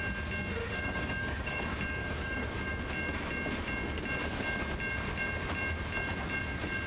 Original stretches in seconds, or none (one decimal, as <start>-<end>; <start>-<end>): 0.0-0.6; 1.6-2.0; 2.8-6.9